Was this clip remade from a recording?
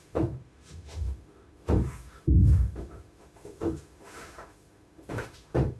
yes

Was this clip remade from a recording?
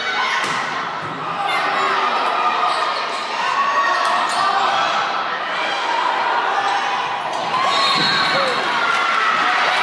no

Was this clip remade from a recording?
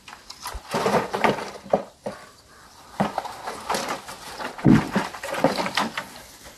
no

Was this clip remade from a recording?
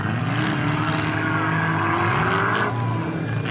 no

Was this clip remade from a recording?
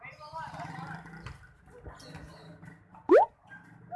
no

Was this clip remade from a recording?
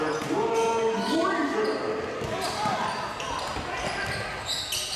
no